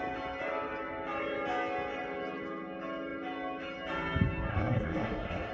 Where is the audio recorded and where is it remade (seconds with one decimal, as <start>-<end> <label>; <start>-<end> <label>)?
0.0-4.5 recorded; 4.5-5.5 remade